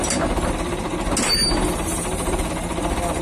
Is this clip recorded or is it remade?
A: recorded